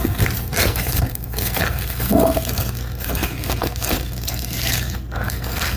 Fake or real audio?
fake